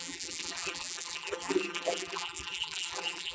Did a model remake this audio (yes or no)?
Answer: yes